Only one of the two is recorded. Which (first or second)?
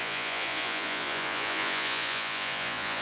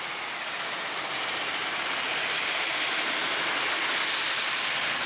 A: second